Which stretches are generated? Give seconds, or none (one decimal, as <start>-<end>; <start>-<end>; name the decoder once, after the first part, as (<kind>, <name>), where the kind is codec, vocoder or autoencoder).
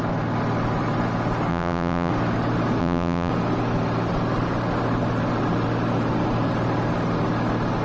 1.5-2.1 (vocoder, BigVGAN v2); 2.8-3.3